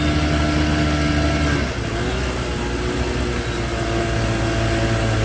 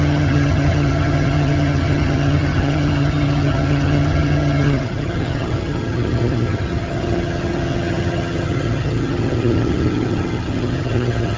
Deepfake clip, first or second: second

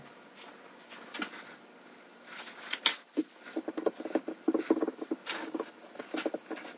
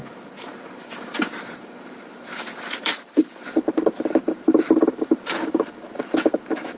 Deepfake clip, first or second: second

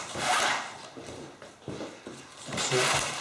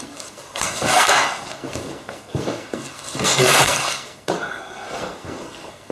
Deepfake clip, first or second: second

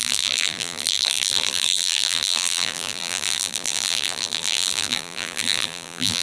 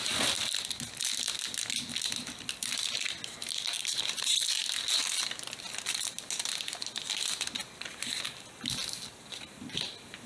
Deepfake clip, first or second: first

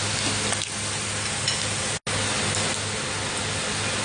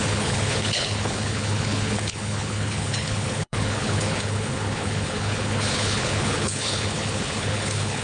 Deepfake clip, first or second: second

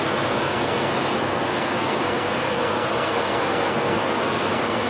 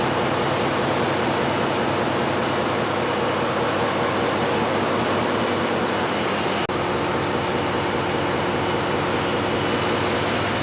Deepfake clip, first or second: first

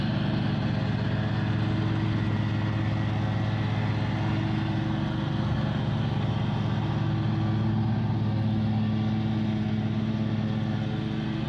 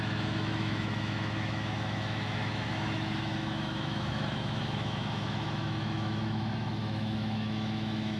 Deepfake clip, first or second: second